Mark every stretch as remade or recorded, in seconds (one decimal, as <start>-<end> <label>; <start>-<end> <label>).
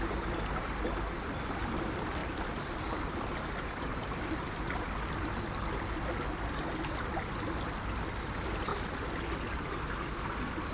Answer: 0.0-2.2 recorded; 2.2-4.2 remade; 4.2-8.7 recorded; 8.7-9.7 remade; 9.7-10.7 recorded